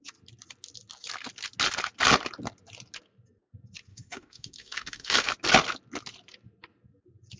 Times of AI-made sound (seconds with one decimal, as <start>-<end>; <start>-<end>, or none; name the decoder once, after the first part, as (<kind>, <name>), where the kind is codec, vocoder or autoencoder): 3.9-5.3 (autoencoder, DAC-VAE)